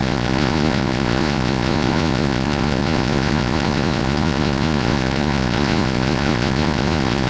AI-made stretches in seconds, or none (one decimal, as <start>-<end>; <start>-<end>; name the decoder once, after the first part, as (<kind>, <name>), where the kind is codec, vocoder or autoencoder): 0.0-7.3 (vocoder, Vocos)